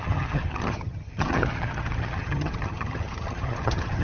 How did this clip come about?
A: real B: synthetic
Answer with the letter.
B